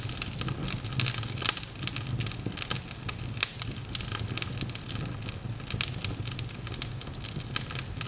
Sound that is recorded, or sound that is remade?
recorded